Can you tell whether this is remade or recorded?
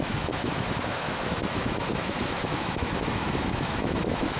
remade